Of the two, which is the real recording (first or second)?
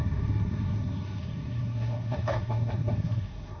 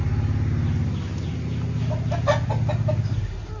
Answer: second